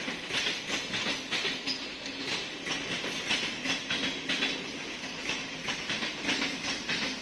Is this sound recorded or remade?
recorded